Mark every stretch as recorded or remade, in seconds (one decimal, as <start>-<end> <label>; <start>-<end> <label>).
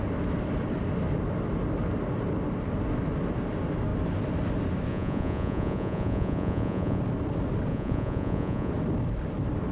0.0-4.9 recorded; 4.9-7.0 remade; 7.0-7.7 recorded; 7.7-8.7 remade; 8.7-9.7 recorded